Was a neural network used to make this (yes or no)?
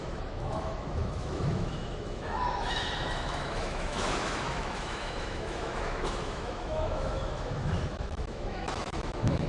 yes